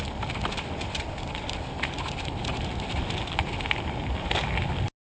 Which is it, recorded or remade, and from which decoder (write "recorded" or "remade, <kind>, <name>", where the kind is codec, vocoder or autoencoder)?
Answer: recorded